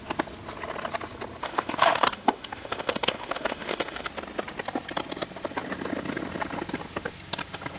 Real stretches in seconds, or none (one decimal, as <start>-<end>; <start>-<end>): 0.0-1.4; 4.1-7.8

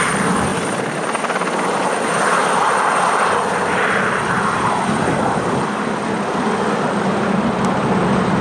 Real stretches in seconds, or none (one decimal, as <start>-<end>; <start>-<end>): 0.0-8.4

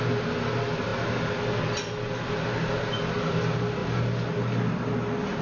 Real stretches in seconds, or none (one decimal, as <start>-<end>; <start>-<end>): 0.0-5.4

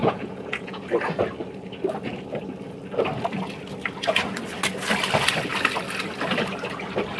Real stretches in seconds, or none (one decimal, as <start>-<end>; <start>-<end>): 0.8-7.2

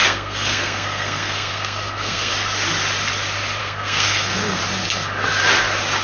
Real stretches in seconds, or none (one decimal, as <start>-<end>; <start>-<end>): 2.3-3.6; 4.6-6.0

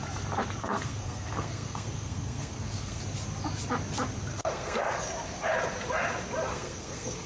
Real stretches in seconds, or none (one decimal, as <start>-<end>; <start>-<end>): 0.0-0.6; 3.0-4.3; 5.0-6.5

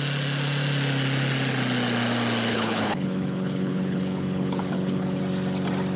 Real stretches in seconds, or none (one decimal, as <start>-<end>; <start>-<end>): 0.0-2.5; 5.2-6.0

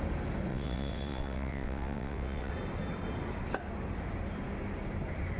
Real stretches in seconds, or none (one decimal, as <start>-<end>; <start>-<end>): 0.0-0.5; 2.5-5.4